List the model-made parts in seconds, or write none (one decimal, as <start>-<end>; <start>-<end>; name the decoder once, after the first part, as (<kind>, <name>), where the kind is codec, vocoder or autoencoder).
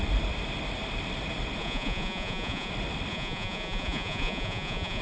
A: 1.6-2.7 (vocoder, Vocos); 3.1-5.0